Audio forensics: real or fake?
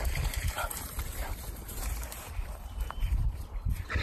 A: fake